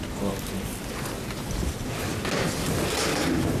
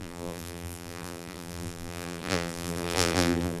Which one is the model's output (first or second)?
second